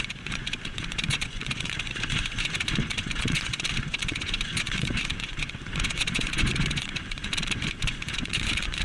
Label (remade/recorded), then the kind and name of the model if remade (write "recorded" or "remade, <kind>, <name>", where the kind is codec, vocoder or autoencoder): remade, vocoder, Vocos